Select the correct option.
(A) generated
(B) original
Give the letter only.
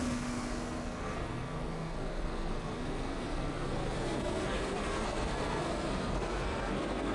A